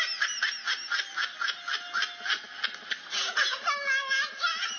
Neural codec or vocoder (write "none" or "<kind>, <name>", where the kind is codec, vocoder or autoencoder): none